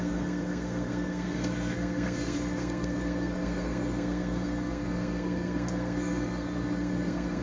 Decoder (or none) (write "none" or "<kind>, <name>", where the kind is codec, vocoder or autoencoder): codec, SNAC